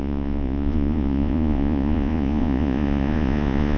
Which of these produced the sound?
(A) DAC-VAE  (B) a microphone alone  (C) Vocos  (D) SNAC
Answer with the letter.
C